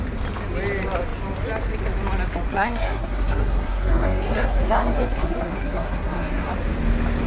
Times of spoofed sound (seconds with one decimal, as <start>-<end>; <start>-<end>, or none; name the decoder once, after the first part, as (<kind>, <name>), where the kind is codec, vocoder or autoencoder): 2.5-6.5 (codec, SNAC)